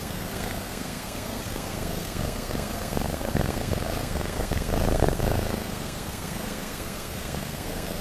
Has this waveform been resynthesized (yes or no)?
yes